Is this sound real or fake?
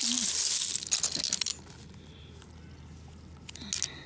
real